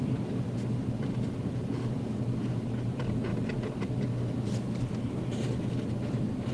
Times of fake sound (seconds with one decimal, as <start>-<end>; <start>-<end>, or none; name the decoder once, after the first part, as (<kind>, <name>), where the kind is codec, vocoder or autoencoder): none